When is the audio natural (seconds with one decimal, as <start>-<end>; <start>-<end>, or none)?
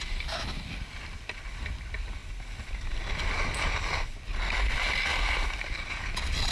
0.0-5.1